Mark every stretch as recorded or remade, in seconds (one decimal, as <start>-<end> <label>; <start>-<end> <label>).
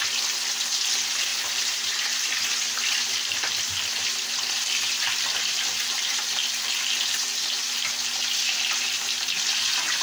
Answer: 0.0-1.3 recorded; 1.3-6.5 remade; 6.5-10.0 recorded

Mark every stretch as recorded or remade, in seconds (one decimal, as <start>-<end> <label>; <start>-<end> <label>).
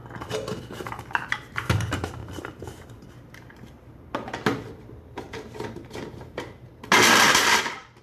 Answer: 0.0-0.6 recorded; 0.6-8.0 remade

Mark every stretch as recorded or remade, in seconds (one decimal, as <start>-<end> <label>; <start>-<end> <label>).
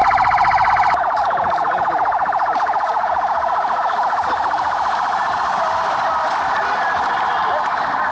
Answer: 0.0-0.7 recorded; 0.7-8.1 remade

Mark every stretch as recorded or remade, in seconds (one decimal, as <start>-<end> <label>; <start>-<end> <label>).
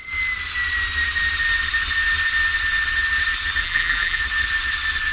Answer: 0.0-3.6 recorded; 3.6-4.2 remade; 4.2-5.1 recorded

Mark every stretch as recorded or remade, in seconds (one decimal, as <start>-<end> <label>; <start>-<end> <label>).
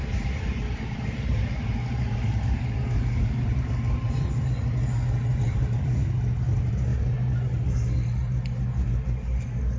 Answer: 0.0-4.5 remade; 4.5-5.3 recorded; 5.3-6.0 remade; 6.0-9.8 recorded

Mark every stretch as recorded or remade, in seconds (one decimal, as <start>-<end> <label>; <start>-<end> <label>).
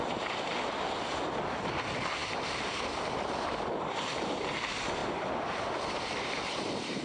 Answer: 0.0-2.2 recorded; 2.2-4.5 remade; 4.5-5.0 recorded; 5.0-7.0 remade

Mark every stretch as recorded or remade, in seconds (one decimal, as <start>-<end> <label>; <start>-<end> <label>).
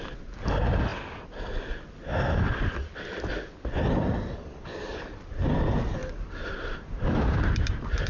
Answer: 0.0-6.0 recorded; 6.0-8.1 remade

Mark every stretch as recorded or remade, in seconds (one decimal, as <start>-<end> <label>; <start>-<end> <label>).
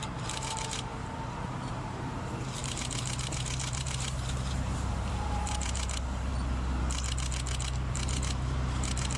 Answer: 0.0-6.3 remade; 6.3-7.9 recorded; 7.9-9.2 remade